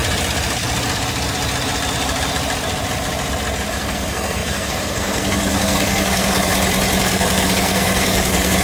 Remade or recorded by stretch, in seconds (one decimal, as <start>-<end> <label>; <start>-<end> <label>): 0.0-3.7 recorded; 3.7-6.5 remade; 6.5-7.0 recorded; 7.0-8.6 remade